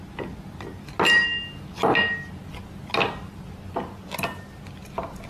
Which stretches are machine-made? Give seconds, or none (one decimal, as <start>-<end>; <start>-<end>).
none